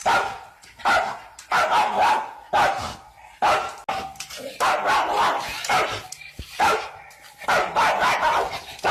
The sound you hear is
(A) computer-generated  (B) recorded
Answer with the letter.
B